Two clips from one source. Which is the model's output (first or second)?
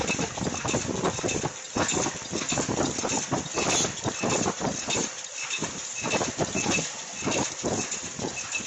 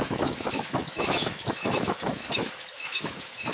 second